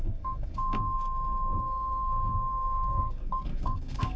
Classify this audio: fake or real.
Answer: fake